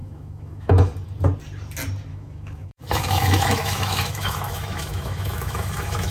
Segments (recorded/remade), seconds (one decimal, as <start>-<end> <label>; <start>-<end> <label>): 0.0-0.9 remade; 0.9-2.1 recorded; 2.1-6.1 remade